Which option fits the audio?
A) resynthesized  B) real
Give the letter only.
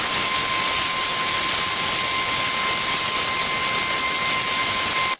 B